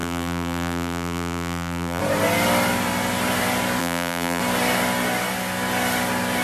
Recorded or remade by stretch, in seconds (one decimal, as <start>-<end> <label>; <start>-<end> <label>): 0.0-2.0 remade; 2.0-3.8 recorded; 3.8-4.4 remade; 4.4-6.4 recorded